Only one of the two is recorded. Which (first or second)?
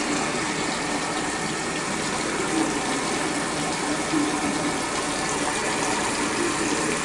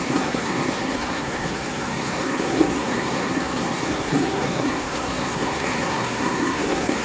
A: first